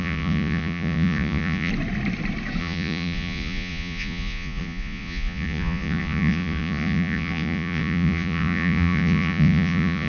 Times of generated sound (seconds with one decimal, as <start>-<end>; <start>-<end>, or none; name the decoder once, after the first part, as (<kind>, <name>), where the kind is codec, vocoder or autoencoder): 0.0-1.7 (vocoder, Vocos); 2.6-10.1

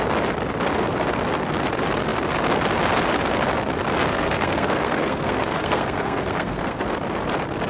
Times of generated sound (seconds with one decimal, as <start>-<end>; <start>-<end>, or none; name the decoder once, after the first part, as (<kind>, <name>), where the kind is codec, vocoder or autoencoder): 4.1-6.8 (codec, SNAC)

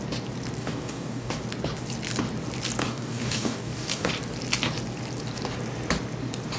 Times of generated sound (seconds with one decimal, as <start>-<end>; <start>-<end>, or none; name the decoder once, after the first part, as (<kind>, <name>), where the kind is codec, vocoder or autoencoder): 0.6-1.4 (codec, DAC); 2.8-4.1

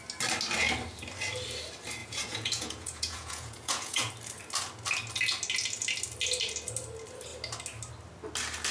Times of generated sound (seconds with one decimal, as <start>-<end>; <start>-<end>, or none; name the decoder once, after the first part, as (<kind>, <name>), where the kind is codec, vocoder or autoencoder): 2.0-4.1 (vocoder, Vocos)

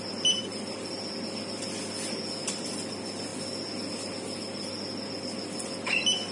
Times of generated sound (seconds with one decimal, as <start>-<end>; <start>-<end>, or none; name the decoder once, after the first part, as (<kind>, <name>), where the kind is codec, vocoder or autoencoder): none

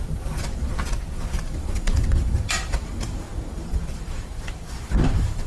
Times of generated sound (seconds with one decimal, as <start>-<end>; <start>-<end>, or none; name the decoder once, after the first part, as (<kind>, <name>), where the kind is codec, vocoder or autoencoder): 0.0-0.7 (vocoder, BigVGAN v2); 1.4-5.5